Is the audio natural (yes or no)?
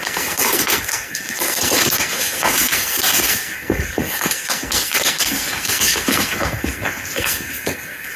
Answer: no